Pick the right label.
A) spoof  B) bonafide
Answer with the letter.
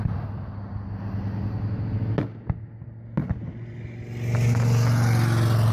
B